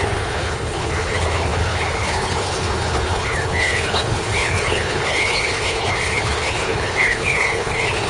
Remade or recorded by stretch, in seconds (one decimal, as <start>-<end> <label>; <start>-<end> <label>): 0.0-8.1 remade